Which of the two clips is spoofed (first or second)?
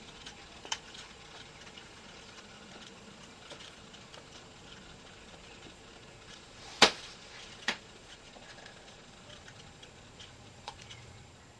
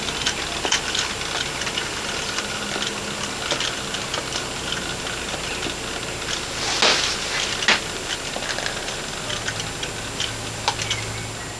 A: first